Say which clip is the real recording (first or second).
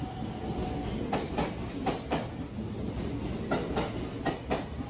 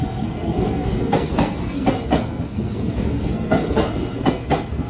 first